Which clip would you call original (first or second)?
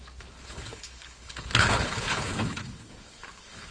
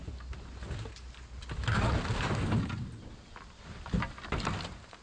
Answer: second